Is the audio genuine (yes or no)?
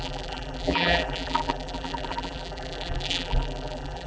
no